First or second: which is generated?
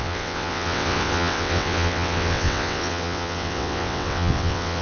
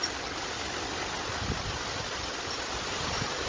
first